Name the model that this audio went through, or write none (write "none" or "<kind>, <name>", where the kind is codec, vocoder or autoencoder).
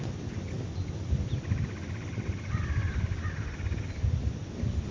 none